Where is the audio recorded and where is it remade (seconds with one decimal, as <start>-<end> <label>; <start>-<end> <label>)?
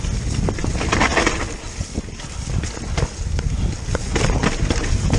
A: 0.0-5.2 recorded